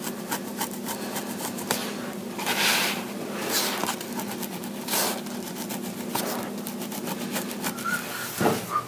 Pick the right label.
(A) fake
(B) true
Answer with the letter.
B